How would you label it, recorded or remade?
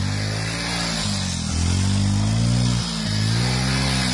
recorded